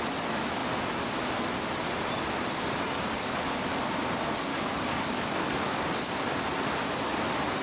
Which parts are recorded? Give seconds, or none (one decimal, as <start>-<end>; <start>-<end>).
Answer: 0.0-4.5; 5.9-7.6